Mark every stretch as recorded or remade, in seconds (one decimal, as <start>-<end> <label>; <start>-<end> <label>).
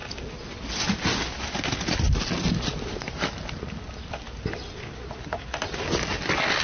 0.0-6.6 recorded